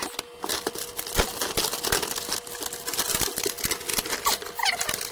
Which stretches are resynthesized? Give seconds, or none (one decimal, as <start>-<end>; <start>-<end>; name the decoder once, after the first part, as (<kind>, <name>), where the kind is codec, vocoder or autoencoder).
none